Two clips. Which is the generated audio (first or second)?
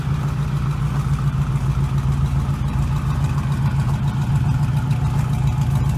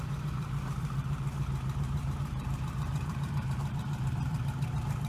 second